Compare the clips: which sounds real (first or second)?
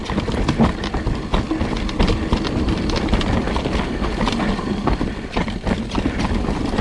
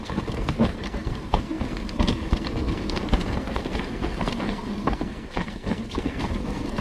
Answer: first